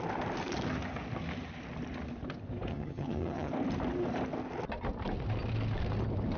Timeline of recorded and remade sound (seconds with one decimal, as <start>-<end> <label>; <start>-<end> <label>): 0.0-2.7 recorded; 2.7-3.5 remade; 3.5-6.4 recorded